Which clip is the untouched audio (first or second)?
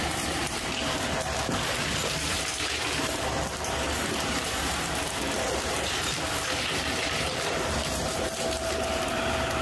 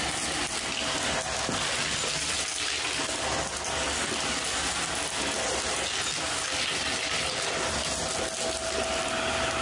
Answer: second